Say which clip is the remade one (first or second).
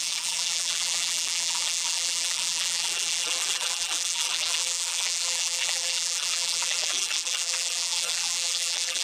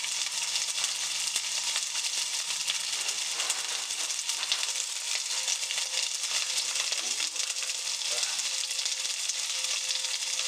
first